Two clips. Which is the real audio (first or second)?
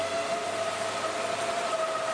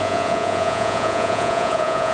first